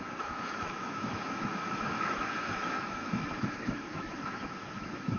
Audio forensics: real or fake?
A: fake